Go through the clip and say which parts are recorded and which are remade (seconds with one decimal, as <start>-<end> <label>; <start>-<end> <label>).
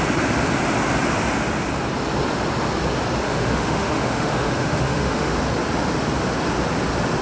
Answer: 0.0-3.2 recorded; 3.2-5.3 remade; 5.3-7.2 recorded